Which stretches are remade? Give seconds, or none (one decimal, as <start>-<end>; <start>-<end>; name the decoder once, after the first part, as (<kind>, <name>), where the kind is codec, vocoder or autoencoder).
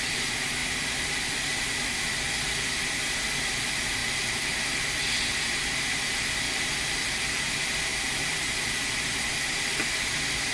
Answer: 0.6-1.4 (vocoder, BigVGAN v2); 7.9-8.5